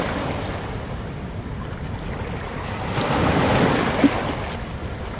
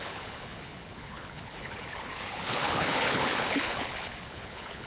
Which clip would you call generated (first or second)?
second